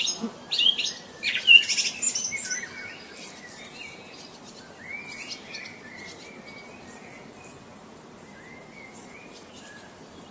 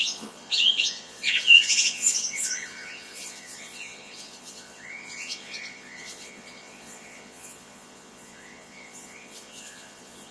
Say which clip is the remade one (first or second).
second